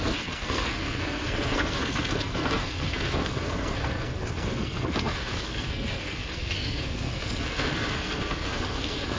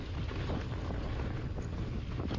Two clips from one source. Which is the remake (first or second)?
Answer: first